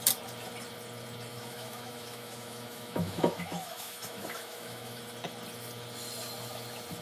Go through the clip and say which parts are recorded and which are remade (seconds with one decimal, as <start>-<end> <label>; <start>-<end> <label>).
0.0-1.3 recorded; 1.3-5.0 remade; 5.0-7.0 recorded